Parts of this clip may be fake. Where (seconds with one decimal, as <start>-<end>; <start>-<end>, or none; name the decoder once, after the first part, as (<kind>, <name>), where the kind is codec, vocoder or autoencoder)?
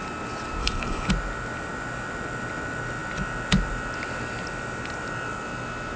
0.6-1.1 (codec, HILCodec)